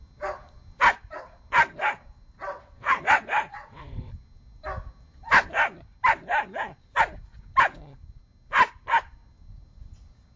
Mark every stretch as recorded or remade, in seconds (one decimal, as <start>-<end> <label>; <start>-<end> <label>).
0.0-2.5 recorded; 2.5-4.1 remade; 4.1-10.4 recorded